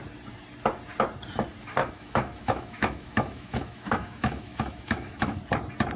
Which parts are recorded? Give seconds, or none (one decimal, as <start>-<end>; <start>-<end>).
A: 0.0-1.8; 5.4-6.0